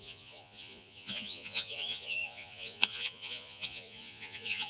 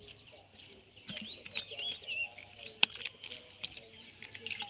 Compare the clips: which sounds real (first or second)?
second